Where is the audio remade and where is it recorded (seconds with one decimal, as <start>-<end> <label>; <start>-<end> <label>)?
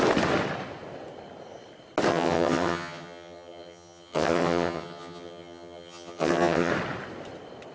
0.0-2.1 recorded; 2.1-6.7 remade; 6.7-7.7 recorded